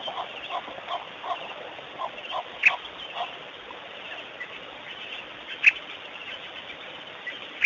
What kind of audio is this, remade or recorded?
recorded